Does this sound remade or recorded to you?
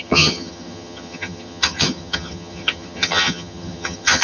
remade